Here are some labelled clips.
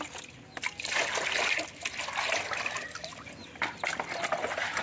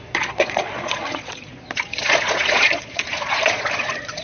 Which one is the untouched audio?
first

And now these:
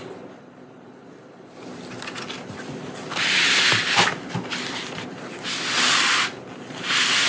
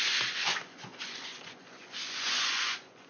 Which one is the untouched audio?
first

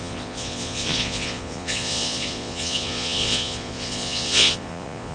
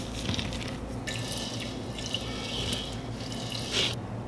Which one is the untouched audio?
second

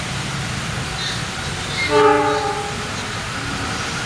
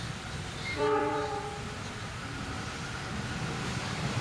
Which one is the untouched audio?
first